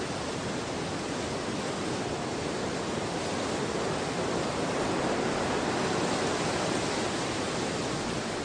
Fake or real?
real